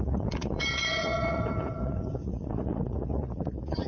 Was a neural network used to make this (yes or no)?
yes